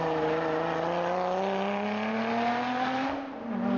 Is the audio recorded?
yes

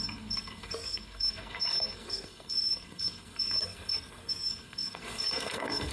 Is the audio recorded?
no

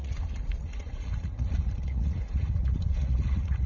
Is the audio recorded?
no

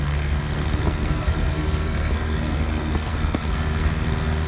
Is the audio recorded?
no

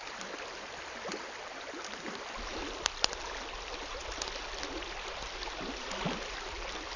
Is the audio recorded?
yes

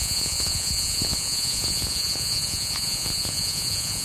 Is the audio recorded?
no